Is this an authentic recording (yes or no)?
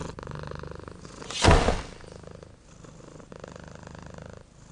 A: yes